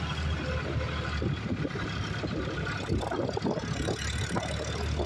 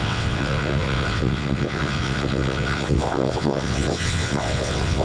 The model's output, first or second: second